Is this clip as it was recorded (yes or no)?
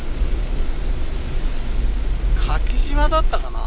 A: yes